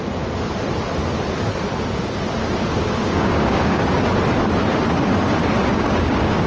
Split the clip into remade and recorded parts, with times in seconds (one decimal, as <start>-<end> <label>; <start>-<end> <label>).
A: 0.0-3.0 recorded; 3.0-3.8 remade; 3.8-5.6 recorded; 5.6-6.5 remade

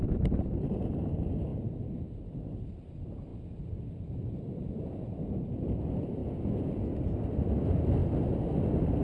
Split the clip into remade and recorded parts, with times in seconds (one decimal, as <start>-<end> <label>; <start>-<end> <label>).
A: 0.0-6.2 recorded; 6.2-6.9 remade; 6.9-9.0 recorded

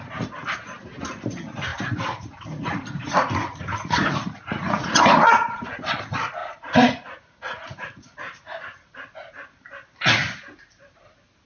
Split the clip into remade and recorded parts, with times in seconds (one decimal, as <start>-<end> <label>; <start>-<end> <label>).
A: 0.0-1.7 recorded; 1.7-5.8 remade; 5.8-6.4 recorded; 6.4-8.9 remade; 8.9-11.5 recorded

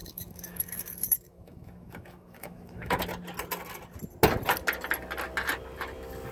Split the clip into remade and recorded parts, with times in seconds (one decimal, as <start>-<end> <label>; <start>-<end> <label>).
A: 0.0-3.0 remade; 3.0-6.3 recorded

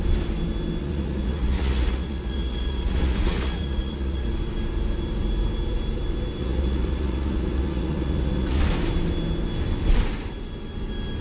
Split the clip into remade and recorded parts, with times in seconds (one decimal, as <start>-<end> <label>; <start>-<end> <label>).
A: 0.0-0.8 recorded; 0.8-4.3 remade; 4.3-6.4 recorded; 6.4-8.6 remade; 8.6-11.2 recorded

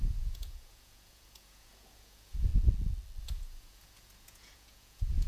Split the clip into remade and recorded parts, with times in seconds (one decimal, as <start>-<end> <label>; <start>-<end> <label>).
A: 0.0-2.5 remade; 2.5-3.2 recorded; 3.2-5.3 remade